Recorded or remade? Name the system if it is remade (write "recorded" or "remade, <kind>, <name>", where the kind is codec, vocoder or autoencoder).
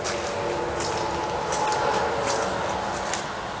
recorded